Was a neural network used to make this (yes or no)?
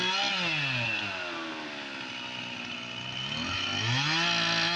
no